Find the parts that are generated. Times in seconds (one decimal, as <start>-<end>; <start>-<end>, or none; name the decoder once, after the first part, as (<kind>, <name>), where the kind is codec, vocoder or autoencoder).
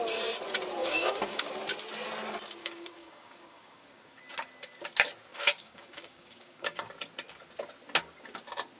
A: 0.8-1.5 (codec, DAC); 2.6-4.2; 5.3-6.9